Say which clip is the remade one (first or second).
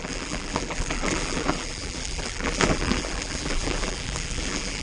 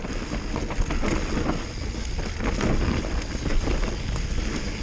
first